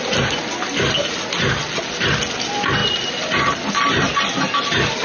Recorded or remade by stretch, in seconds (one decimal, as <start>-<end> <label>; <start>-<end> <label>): 0.0-5.0 recorded